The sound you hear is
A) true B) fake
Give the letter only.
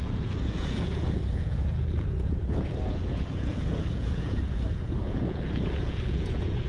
B